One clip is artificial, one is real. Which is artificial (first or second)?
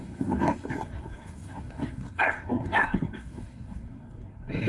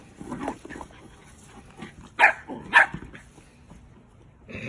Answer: first